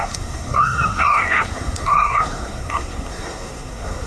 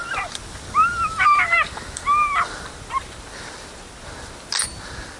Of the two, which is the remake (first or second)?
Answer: first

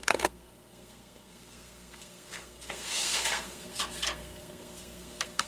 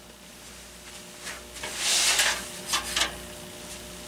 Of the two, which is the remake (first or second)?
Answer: first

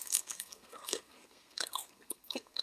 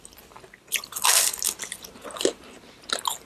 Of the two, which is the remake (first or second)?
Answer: first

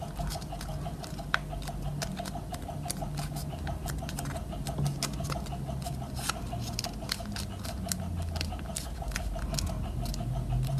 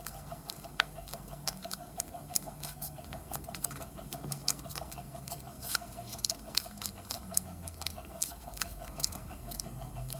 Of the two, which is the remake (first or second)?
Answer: second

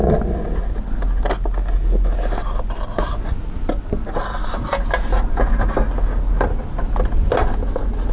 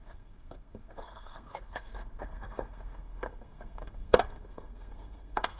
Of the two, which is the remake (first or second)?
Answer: second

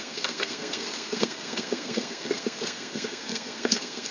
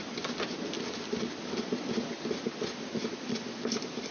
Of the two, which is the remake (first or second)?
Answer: first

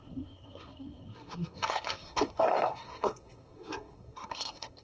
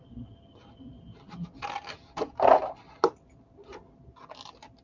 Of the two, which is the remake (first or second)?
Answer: first